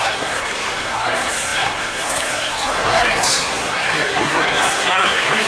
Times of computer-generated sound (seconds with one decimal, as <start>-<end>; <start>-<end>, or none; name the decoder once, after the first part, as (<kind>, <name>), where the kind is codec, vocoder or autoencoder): 0.0-5.5 (codec, SNAC)